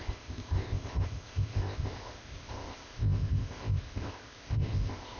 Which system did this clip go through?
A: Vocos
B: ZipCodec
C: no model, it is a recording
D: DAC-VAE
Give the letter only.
B